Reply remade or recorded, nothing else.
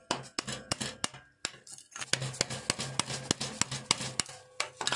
recorded